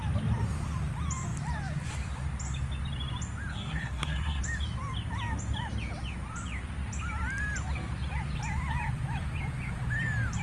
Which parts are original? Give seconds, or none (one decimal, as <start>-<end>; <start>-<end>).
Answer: 0.0-3.5; 4.4-10.4

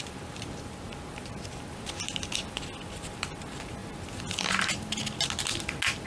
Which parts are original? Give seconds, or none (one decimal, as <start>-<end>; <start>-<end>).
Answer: 0.0-6.1

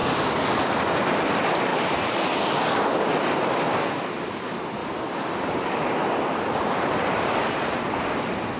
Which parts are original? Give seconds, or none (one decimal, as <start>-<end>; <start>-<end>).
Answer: 0.0-1.0

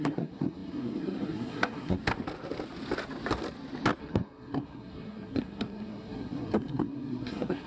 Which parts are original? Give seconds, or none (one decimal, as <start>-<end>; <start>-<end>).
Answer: 2.0-4.0

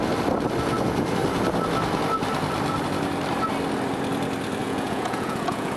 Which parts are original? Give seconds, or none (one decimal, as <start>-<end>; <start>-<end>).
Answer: 0.0-4.6

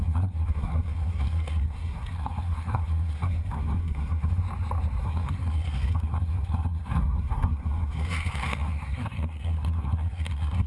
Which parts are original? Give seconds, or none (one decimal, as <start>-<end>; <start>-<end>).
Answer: 4.4-5.0

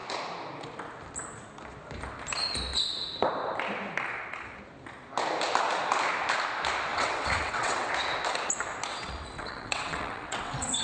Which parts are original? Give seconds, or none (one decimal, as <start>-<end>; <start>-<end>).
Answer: 0.0-6.9; 7.9-8.9

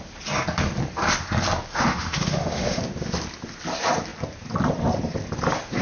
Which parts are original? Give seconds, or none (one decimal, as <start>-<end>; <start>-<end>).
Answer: 0.0-1.7; 2.8-5.8